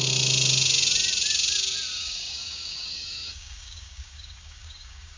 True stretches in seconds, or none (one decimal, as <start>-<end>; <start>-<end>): 0.0-1.9